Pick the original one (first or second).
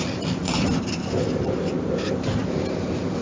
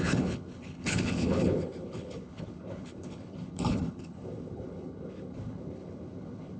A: first